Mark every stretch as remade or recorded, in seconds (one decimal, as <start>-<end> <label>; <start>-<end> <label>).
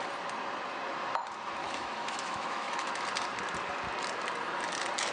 0.0-1.6 recorded; 1.6-2.9 remade; 2.9-5.1 recorded